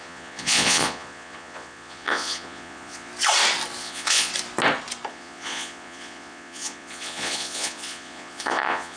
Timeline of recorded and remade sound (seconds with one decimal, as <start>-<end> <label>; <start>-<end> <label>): 0.0-3.1 remade; 3.1-3.8 recorded; 3.8-4.3 remade; 4.3-5.1 recorded; 5.1-9.0 remade

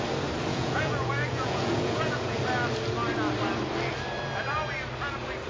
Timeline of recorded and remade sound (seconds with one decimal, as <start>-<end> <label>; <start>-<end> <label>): 0.0-0.5 recorded; 0.5-2.4 remade; 2.4-5.5 recorded

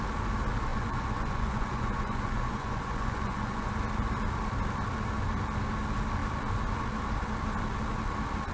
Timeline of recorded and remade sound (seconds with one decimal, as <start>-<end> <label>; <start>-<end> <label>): 0.0-0.7 recorded; 0.7-3.7 remade; 3.7-8.5 recorded

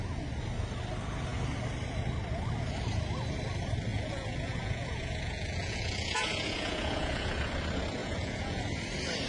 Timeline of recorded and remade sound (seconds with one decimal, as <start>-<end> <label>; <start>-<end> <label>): 0.0-3.9 recorded; 3.9-7.5 remade; 7.5-8.0 recorded; 8.0-8.6 remade; 8.6-9.3 recorded